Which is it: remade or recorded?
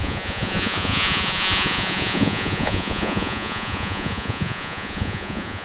remade